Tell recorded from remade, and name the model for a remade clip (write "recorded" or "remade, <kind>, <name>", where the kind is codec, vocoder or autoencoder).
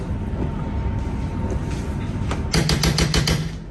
recorded